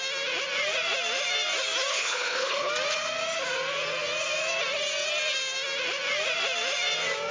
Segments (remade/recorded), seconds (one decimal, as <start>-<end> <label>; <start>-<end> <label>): 0.0-1.9 recorded; 1.9-2.7 remade; 2.7-7.3 recorded